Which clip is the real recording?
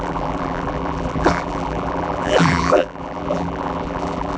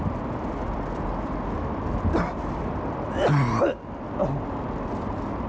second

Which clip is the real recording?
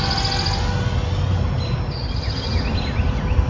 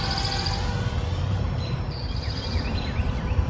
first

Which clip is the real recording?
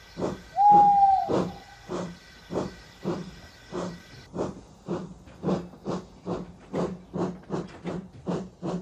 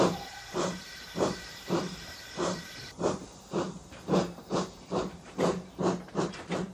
first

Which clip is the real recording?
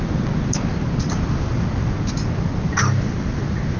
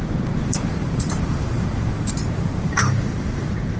first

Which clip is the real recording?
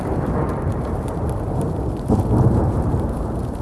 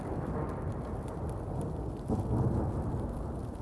second